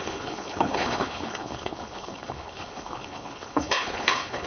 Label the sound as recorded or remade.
remade